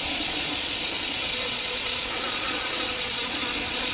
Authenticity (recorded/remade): remade